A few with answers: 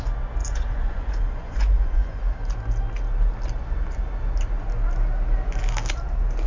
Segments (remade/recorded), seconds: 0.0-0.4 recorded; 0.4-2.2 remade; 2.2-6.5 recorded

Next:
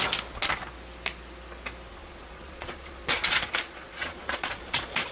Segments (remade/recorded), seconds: 0.0-1.9 recorded; 1.9-5.1 remade

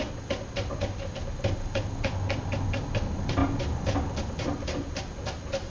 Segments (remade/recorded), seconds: 0.0-5.7 recorded

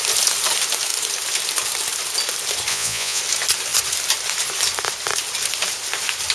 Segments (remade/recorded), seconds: 0.0-2.7 recorded; 2.7-3.2 remade; 3.2-6.3 recorded

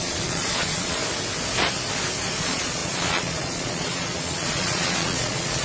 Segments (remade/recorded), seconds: 0.0-1.0 remade; 1.0-2.4 recorded; 2.4-5.6 remade